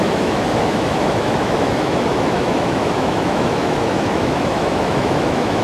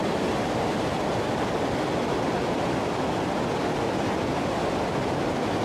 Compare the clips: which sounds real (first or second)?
second